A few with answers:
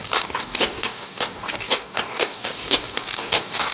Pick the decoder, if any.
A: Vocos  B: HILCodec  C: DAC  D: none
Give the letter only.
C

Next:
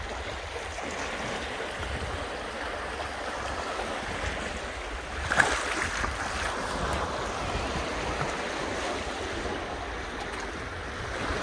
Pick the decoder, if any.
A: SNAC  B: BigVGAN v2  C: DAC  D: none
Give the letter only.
D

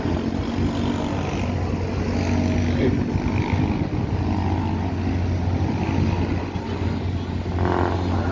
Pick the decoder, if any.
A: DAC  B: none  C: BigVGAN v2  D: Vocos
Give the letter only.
B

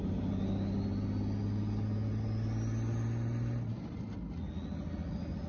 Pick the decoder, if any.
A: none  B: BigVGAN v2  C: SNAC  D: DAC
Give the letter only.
A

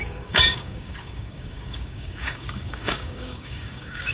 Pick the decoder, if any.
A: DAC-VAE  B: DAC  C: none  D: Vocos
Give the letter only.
B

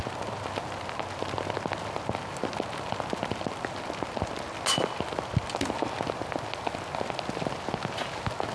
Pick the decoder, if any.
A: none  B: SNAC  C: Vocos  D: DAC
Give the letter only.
A